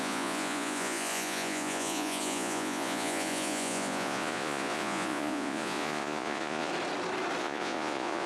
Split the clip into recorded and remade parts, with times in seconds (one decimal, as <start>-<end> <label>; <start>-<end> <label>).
0.0-6.7 remade; 6.7-7.4 recorded; 7.4-8.3 remade